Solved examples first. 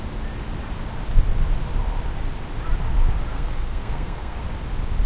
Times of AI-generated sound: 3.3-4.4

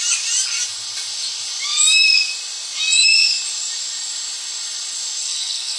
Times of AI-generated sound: 5.2-5.8

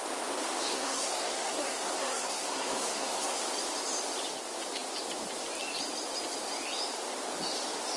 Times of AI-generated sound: 0.7-3.4

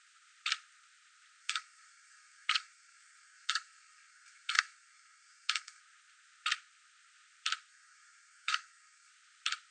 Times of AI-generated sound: 1.4-5.8; 7.7-9.1